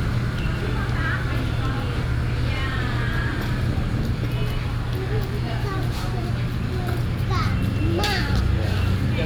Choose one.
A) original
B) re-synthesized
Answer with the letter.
A